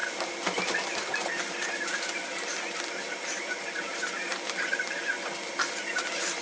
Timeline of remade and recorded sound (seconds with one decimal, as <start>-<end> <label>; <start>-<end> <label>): 0.0-6.4 recorded